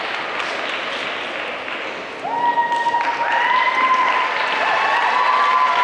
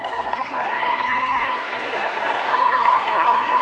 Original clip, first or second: first